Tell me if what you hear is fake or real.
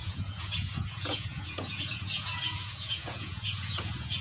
fake